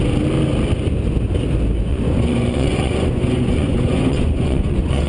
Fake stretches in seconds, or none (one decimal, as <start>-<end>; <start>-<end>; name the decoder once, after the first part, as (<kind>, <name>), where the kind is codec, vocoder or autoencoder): 1.9-5.1 (vocoder, Vocos)